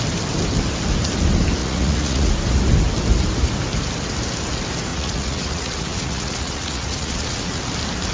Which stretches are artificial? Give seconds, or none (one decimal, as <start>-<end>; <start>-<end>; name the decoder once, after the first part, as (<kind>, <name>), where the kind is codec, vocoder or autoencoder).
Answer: 1.6-2.3 (vocoder, Vocos); 4.9-7.6